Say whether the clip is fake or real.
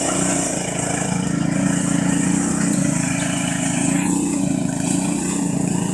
fake